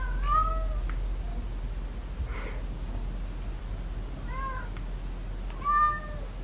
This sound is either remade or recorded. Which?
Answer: recorded